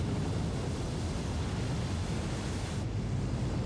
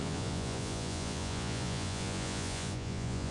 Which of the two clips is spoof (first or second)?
second